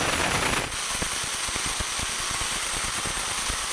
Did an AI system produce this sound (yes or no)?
no